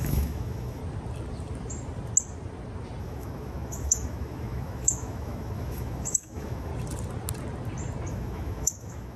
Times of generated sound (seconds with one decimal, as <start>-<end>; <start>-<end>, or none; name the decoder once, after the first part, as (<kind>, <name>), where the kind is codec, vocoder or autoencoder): 0.0-0.8 (autoencoder, DAC-VAE); 3.0-6.7; 8.1-9.2